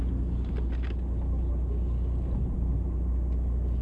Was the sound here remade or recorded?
recorded